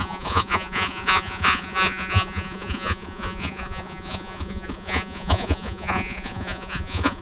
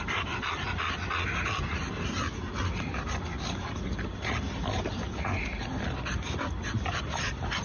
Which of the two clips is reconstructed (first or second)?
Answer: first